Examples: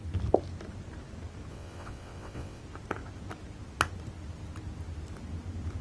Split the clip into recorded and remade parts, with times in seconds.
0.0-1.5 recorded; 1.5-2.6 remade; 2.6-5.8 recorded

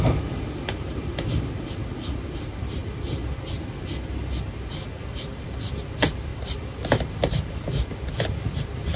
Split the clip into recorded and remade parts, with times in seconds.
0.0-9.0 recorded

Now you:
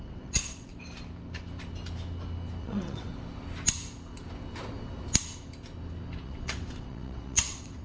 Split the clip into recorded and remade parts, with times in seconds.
0.0-0.7 remade; 0.7-2.6 recorded; 2.6-3.1 remade; 3.1-6.2 recorded; 6.2-7.8 remade

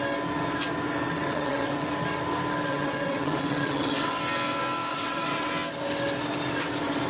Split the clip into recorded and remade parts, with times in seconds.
0.0-1.2 recorded; 1.2-1.9 remade; 1.9-2.7 recorded; 2.7-4.2 remade; 4.2-4.9 recorded; 4.9-5.5 remade; 5.5-7.1 recorded